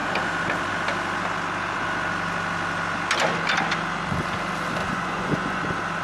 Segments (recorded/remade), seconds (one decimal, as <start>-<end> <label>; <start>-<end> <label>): 0.0-4.8 recorded; 4.8-5.6 remade; 5.6-6.0 recorded